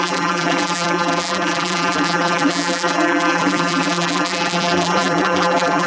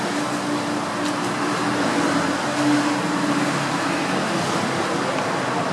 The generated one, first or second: first